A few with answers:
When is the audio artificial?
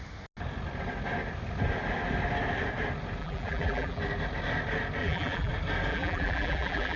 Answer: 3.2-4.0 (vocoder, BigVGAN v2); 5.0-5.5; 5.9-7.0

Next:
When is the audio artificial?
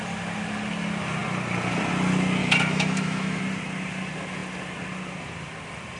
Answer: 2.4-3.4 (autoencoder, DAC-VAE)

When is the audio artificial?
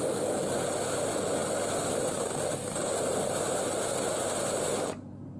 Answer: none